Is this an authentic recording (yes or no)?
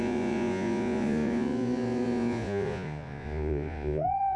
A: no